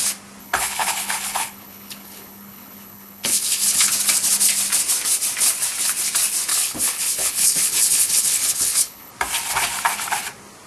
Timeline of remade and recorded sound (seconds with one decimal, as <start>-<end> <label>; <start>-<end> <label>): 0.0-0.4 recorded; 0.4-3.9 remade; 3.9-6.5 recorded; 6.5-9.1 remade; 9.1-10.7 recorded